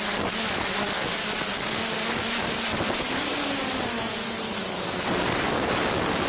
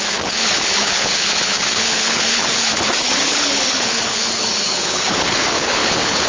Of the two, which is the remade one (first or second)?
second